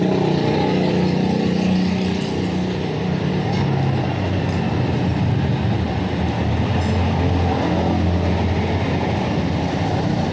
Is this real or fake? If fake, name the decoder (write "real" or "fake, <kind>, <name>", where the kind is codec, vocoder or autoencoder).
real